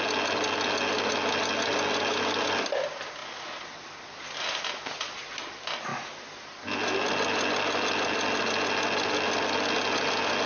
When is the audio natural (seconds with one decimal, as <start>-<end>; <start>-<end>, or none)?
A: 0.0-10.5